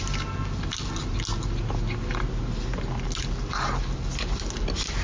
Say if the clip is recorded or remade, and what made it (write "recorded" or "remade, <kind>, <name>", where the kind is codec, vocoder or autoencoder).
recorded